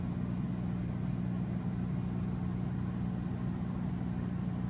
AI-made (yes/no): no